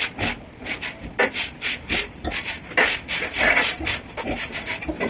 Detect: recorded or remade recorded